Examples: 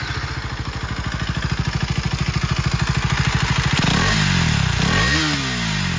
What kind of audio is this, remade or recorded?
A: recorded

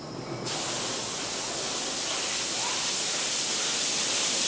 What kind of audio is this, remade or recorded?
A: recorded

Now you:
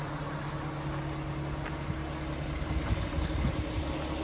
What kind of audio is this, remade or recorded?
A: recorded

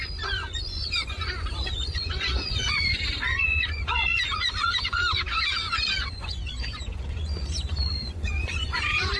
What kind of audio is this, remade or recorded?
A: remade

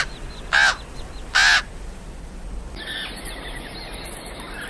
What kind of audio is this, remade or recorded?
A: recorded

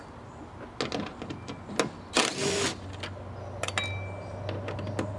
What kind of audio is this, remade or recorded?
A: recorded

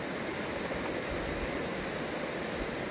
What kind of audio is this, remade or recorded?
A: recorded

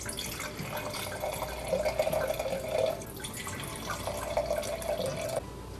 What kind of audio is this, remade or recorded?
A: recorded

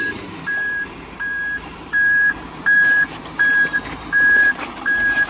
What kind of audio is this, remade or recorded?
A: remade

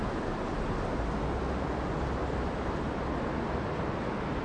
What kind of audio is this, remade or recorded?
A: recorded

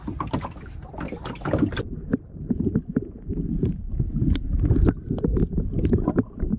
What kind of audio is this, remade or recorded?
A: recorded